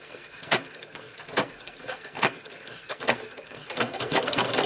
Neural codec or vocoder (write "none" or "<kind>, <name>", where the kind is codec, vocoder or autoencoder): codec, SNAC